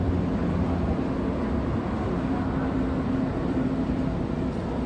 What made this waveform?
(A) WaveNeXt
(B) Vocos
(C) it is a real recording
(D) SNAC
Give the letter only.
C